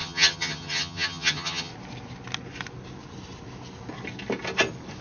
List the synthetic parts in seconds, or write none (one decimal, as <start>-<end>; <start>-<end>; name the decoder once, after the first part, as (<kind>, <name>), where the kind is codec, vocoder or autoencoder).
0.0-1.7 (vocoder, HiFi-GAN)

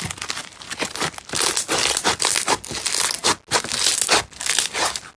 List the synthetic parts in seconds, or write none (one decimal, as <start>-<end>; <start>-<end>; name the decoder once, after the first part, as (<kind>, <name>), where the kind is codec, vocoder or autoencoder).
none

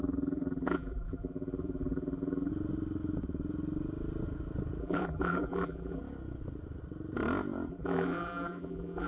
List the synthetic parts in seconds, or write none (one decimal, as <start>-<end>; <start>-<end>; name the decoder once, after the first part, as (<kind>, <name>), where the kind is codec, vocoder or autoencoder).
0.0-2.5 (vocoder, BigVGAN v2); 4.8-6.0; 7.7-9.1

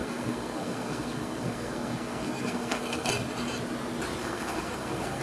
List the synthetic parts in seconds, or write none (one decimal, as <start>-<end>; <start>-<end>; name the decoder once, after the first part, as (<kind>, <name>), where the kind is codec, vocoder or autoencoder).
0.0-3.1 (codec, SNAC); 4.2-5.2

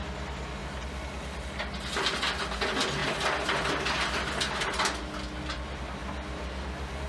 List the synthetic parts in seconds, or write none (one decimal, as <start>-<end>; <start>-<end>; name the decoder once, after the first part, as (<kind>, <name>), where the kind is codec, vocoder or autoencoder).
none